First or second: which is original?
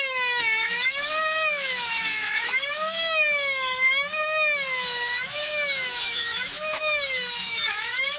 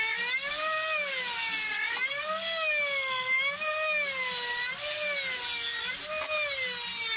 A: second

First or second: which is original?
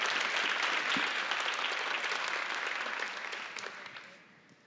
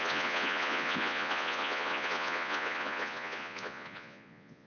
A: first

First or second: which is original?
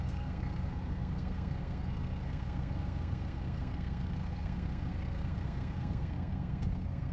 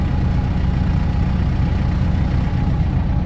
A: second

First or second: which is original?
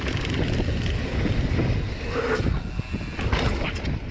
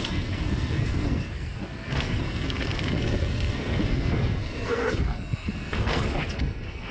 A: first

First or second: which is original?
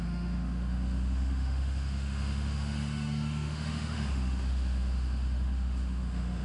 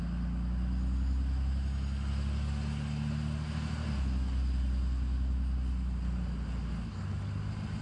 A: second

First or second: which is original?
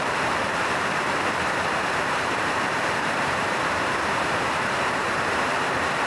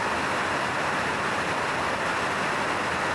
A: second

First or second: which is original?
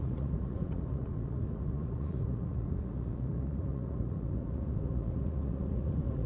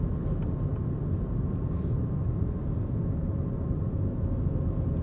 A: second